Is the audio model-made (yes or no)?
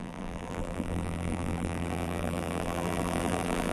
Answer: yes